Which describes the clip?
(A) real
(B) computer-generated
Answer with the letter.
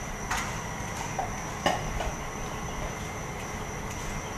A